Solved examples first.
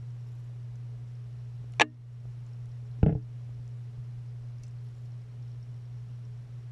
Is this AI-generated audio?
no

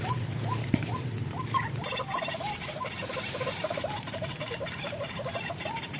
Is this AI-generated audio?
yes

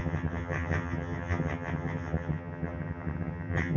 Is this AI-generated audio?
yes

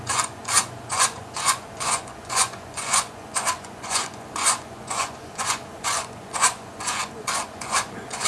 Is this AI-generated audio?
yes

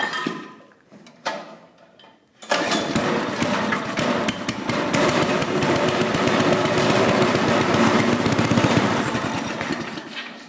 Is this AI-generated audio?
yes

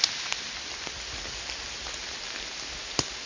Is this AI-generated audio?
no